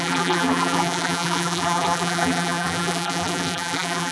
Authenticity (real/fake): fake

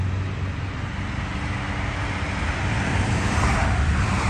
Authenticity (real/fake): real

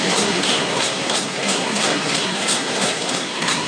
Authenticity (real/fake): fake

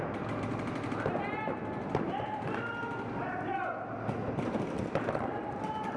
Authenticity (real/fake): real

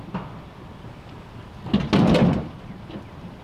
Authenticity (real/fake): real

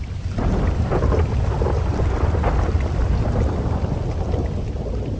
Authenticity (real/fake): real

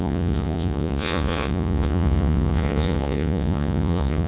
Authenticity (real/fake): fake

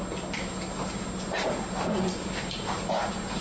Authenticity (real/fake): real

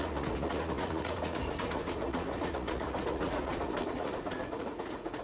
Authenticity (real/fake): fake